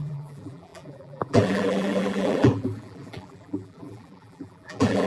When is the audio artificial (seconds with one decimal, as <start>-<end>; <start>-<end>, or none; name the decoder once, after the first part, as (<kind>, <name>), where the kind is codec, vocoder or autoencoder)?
0.0-5.1 (vocoder, BigVGAN v2)